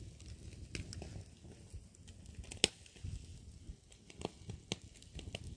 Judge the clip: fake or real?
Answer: real